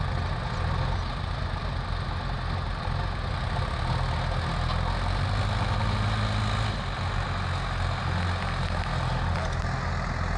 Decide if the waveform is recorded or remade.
recorded